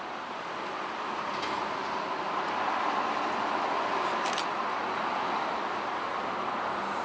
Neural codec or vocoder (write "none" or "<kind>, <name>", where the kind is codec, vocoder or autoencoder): none